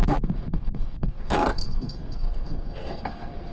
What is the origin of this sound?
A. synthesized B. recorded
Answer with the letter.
A